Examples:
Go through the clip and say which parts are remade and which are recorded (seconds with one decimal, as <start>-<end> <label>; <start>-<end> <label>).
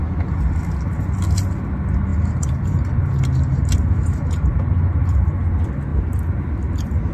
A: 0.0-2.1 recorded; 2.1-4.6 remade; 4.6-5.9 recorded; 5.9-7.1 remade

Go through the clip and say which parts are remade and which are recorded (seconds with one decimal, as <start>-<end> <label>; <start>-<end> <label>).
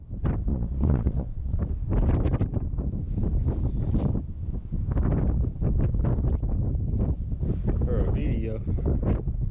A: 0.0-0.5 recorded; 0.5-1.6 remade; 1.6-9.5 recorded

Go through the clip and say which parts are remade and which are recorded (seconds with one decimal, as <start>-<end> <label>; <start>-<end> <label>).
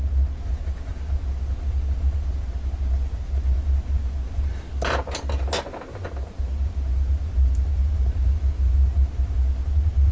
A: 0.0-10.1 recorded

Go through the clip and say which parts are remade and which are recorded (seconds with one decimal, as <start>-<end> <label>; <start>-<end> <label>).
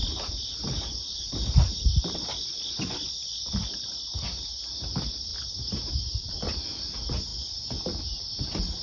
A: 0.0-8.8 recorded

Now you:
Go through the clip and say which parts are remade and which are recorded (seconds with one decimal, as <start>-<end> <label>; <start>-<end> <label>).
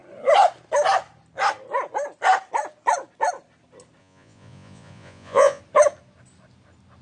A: 0.0-4.0 recorded; 4.0-5.6 remade; 5.6-7.0 recorded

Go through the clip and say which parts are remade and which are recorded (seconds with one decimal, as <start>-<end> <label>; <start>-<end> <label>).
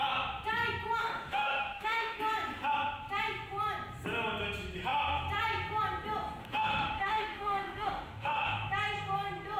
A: 0.0-1.0 recorded; 1.0-2.2 remade; 2.2-6.4 recorded; 6.4-8.7 remade; 8.7-9.6 recorded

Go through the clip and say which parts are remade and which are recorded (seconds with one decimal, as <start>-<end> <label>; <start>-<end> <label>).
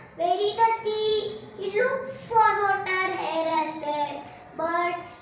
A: 0.0-3.5 recorded; 3.5-4.7 remade; 4.7-5.2 recorded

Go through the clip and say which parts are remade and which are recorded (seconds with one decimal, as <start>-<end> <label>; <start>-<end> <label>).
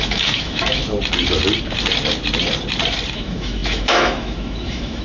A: 0.0-0.8 remade; 0.8-3.1 recorded; 3.1-5.0 remade